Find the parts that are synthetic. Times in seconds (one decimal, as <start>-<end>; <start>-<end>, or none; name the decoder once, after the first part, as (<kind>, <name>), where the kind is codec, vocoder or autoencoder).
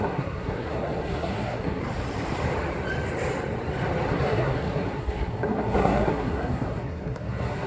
0.0-1.8 (codec, SNAC); 4.1-7.7